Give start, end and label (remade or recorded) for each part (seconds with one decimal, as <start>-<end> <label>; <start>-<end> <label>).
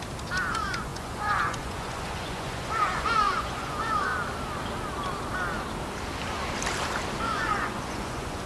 0.0-0.5 recorded; 0.5-4.1 remade; 4.1-7.2 recorded; 7.2-8.5 remade